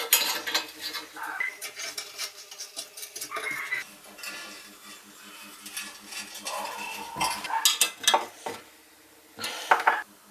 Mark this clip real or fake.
real